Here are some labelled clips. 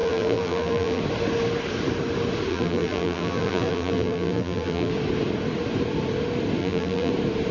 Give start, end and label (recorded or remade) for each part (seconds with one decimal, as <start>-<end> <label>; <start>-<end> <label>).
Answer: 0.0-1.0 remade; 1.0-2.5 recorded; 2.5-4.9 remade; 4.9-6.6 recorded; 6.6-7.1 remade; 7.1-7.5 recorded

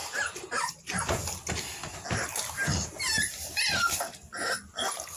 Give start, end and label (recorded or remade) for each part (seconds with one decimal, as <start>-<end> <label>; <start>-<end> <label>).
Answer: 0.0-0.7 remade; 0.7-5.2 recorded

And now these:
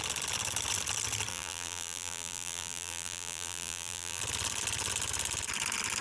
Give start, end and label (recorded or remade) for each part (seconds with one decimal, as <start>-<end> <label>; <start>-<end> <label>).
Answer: 0.0-1.3 recorded; 1.3-4.2 remade; 4.2-6.0 recorded

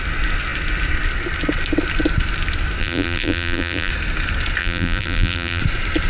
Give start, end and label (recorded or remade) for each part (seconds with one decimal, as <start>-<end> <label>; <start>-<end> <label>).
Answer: 0.0-2.8 recorded; 2.8-3.9 remade; 3.9-4.6 recorded; 4.6-5.6 remade; 5.6-6.1 recorded

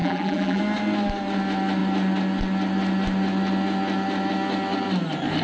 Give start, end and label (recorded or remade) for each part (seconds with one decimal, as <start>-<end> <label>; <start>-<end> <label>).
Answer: 0.0-0.6 remade; 0.6-5.4 recorded

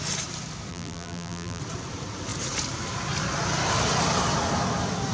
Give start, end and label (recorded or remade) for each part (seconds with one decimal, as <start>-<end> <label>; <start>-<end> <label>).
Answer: 0.0-0.7 recorded; 0.7-1.6 remade; 1.6-5.1 recorded

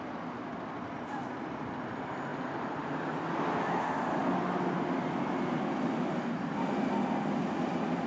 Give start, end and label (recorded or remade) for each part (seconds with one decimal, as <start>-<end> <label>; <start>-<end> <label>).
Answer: 0.0-8.1 recorded

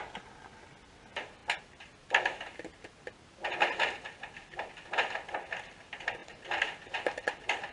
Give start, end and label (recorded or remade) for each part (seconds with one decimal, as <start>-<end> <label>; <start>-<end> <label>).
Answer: 0.0-7.7 recorded